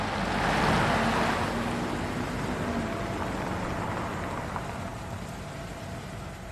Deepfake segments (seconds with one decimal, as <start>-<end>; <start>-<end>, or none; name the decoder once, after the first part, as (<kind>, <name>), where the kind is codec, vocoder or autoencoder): none